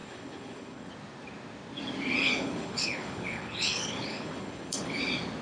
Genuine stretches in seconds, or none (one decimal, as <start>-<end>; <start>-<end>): 0.9-2.2; 5.0-5.4